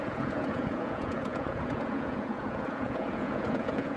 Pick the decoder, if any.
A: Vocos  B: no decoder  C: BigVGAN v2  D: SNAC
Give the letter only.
A